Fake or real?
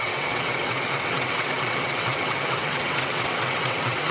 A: fake